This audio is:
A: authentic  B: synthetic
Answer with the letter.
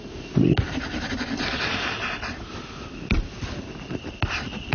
A